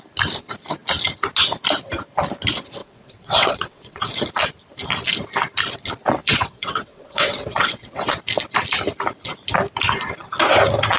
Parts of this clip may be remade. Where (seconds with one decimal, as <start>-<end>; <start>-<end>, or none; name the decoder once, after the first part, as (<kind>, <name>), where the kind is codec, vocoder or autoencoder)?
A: 2.8-4.0 (vocoder, WaveNeXt); 6.2-8.1